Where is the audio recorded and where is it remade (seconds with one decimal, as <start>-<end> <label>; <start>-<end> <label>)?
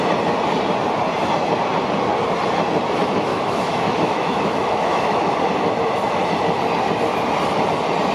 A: 0.0-3.3 recorded; 3.3-5.3 remade; 5.3-8.1 recorded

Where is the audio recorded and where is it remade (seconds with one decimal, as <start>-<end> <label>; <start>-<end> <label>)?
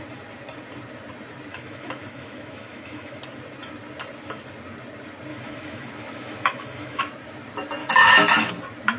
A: 0.0-1.5 recorded; 1.5-3.2 remade; 3.2-5.3 recorded; 5.3-7.0 remade; 7.0-7.8 recorded; 7.8-8.5 remade; 8.5-9.0 recorded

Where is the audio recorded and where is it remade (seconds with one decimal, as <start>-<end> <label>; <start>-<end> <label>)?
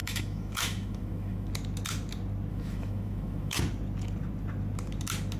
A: 0.0-1.5 remade; 1.5-2.5 recorded; 2.5-3.6 remade; 3.6-5.4 recorded